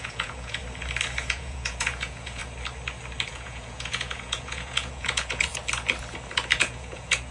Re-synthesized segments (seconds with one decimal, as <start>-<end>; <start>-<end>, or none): 0.0-0.6; 1.3-2.4; 3.3-5.5; 6.6-7.3